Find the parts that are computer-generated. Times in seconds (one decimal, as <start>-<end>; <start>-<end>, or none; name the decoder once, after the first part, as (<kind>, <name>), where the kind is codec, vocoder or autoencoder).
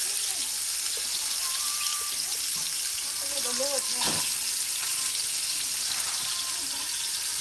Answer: none